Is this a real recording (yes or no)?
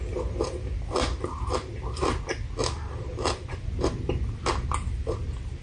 yes